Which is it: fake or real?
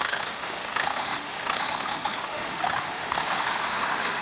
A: fake